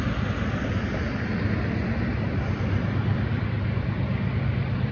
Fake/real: real